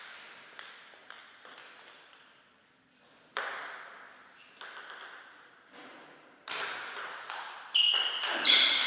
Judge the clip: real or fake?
real